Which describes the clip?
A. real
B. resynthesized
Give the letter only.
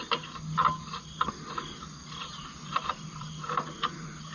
B